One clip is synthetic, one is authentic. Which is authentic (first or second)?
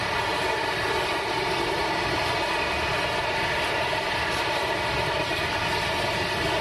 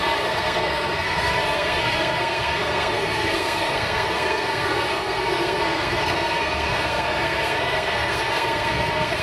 first